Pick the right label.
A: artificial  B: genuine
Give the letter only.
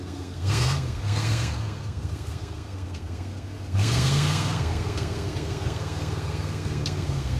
A